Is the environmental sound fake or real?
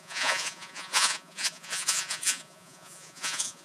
fake